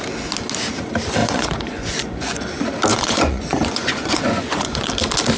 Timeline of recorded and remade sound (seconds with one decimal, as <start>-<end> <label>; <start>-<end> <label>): 0.0-1.2 recorded; 1.2-2.4 remade; 2.4-2.9 recorded; 2.9-4.9 remade; 4.9-5.4 recorded